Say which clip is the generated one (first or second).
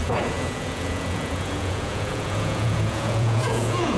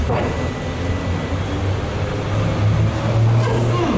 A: first